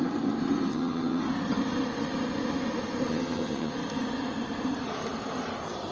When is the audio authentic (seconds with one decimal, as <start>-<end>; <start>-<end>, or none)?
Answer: 0.0-0.7; 1.2-3.1; 3.7-5.9